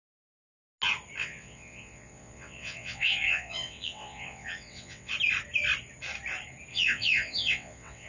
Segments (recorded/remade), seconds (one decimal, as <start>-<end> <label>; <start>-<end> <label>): 0.0-1.2 recorded; 1.2-5.1 remade; 5.1-6.7 recorded; 6.7-8.1 remade

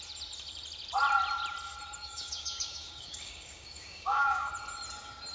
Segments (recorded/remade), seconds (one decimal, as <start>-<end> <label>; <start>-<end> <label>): 0.0-2.0 recorded; 2.0-4.5 remade; 4.5-5.3 recorded

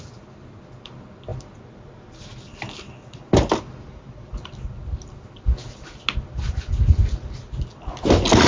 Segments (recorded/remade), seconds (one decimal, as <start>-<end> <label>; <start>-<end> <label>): 0.0-8.5 recorded

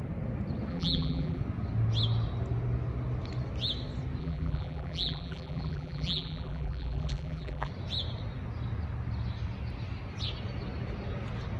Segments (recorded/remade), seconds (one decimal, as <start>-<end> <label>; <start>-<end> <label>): 0.0-0.7 recorded; 0.7-1.4 remade; 1.4-4.2 recorded; 4.2-7.7 remade; 7.7-11.6 recorded

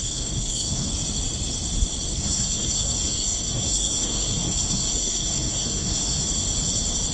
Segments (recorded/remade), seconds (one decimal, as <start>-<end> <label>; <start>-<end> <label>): 0.0-0.9 remade; 0.9-2.1 recorded; 2.1-6.2 remade; 6.2-7.1 recorded

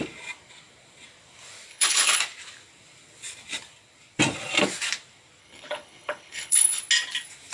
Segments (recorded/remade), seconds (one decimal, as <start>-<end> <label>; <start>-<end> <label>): 0.0-1.7 recorded; 1.7-2.2 remade; 2.2-5.4 recorded; 5.4-6.8 remade; 6.8-7.5 recorded